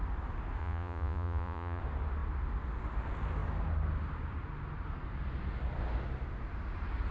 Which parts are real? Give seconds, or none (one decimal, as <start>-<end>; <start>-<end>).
0.0-0.6; 1.8-7.1